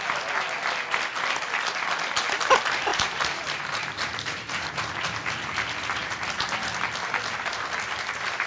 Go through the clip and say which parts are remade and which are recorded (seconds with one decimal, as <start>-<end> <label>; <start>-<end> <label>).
0.0-2.9 recorded; 2.9-4.7 remade; 4.7-8.5 recorded